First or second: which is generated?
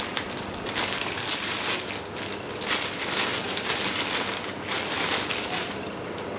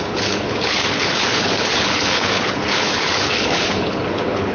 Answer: second